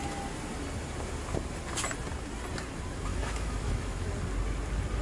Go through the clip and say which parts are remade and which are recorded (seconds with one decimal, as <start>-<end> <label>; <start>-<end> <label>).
0.0-3.1 recorded; 3.1-4.1 remade; 4.1-5.0 recorded